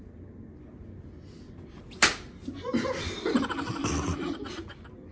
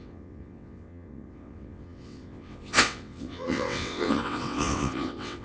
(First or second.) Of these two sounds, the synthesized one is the second